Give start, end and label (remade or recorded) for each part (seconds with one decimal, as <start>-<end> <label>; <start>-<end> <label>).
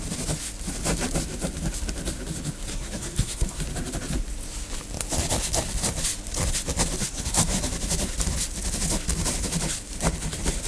0.0-2.7 recorded; 2.7-3.6 remade; 3.6-7.0 recorded; 7.0-7.6 remade; 7.6-10.7 recorded